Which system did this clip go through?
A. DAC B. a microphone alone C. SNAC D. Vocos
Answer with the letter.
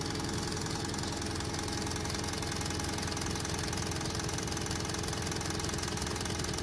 B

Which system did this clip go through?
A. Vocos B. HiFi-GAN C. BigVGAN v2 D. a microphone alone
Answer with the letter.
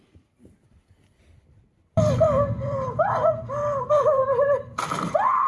C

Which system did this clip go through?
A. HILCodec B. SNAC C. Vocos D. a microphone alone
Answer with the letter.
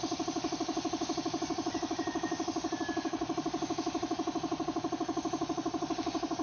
D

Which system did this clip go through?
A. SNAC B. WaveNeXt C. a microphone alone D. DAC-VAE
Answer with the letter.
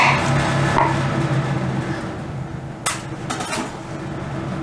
C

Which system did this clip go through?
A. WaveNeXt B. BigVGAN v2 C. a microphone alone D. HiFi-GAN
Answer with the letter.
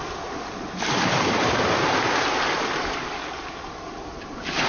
C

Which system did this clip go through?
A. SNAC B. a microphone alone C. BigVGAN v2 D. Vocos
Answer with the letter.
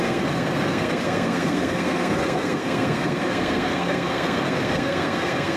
A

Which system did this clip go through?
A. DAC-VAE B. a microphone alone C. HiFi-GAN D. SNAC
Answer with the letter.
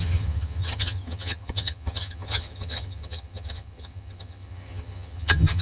C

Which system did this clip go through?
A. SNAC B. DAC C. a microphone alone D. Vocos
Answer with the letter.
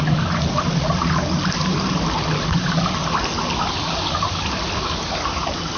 C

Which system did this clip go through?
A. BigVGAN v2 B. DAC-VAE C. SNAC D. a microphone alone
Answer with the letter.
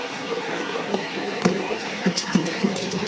C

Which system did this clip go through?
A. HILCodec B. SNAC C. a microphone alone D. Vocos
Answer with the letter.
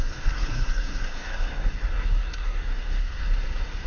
B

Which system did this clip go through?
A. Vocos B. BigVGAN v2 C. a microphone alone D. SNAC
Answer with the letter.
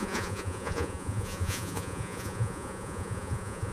A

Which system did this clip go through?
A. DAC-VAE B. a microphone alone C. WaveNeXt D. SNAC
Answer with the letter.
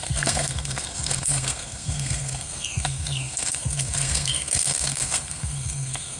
D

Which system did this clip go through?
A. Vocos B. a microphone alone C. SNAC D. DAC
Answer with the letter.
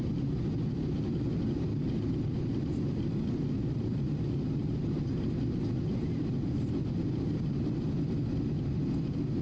B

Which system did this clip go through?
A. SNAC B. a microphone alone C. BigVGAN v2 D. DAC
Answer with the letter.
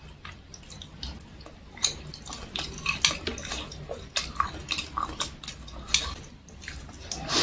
B